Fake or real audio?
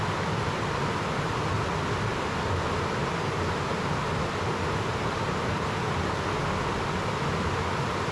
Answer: real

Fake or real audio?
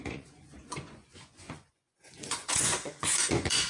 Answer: fake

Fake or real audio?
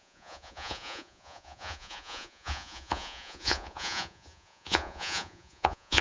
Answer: fake